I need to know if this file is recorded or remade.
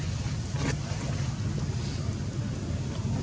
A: recorded